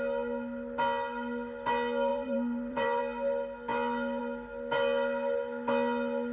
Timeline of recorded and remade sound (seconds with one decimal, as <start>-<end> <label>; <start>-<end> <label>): 0.0-2.1 recorded; 2.1-3.0 remade; 3.0-6.3 recorded

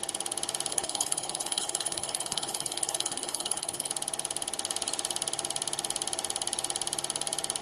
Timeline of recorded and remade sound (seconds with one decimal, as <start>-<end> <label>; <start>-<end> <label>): 0.0-0.7 recorded; 0.7-3.9 remade; 3.9-7.6 recorded

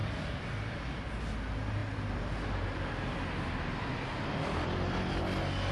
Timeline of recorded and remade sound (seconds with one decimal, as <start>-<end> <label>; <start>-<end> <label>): 0.0-1.2 remade; 1.2-5.7 recorded

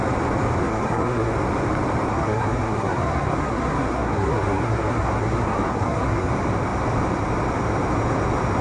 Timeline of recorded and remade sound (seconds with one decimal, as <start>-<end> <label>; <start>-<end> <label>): 0.0-0.6 recorded; 0.6-1.3 remade; 1.3-2.1 recorded; 2.1-6.3 remade; 6.3-8.6 recorded